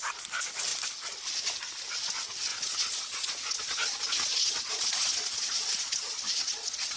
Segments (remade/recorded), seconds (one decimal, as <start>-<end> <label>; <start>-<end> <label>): 0.0-2.5 recorded; 2.5-7.0 remade